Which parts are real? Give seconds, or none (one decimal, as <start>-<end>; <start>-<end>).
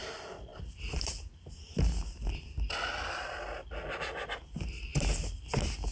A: 0.0-0.5; 1.2-5.9